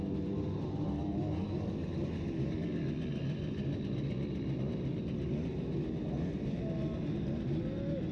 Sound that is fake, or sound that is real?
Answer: real